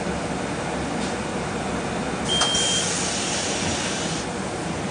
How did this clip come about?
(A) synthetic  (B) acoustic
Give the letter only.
B